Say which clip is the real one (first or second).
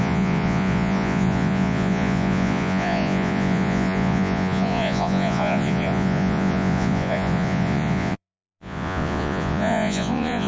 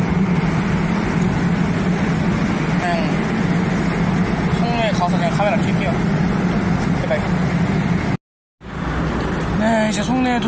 second